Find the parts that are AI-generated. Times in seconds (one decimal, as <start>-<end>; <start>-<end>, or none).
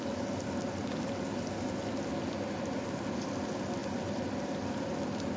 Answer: none